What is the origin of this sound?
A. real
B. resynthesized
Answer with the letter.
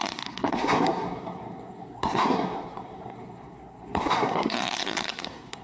B